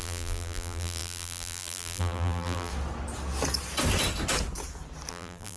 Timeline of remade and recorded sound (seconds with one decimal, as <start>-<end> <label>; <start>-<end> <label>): 0.0-2.7 remade; 2.7-5.1 recorded; 5.1-5.6 remade

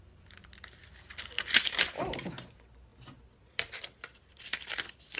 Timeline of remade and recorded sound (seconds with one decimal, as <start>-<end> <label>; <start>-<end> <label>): 0.0-5.2 recorded